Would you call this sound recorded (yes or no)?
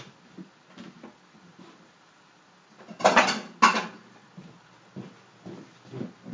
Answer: yes